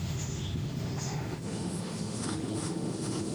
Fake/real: fake